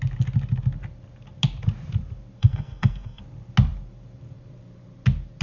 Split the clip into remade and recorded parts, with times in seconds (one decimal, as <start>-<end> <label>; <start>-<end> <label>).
0.0-2.4 recorded; 2.4-3.2 remade; 3.2-5.4 recorded